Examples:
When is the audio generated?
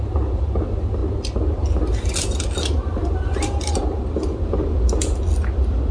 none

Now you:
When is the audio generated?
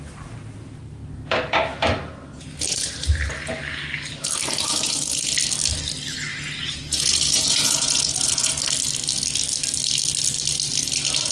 6.3-8.6 (vocoder, Vocos)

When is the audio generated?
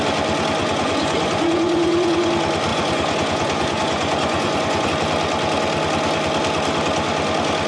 0.6-2.3 (vocoder, Vocos); 2.7-4.9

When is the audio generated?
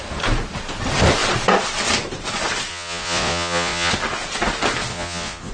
2.7-3.9 (vocoder, Vocos); 4.9-5.5